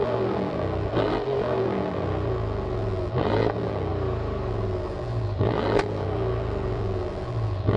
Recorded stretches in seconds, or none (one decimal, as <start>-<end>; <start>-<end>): 3.9-4.5